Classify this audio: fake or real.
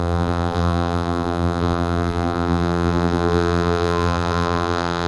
fake